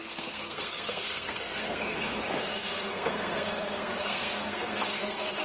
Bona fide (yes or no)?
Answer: no